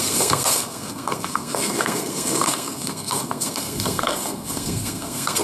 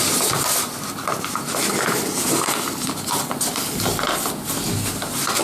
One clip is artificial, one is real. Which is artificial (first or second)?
first